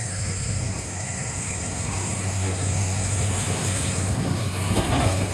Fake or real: fake